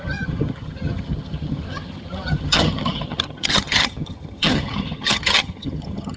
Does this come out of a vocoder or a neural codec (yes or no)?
yes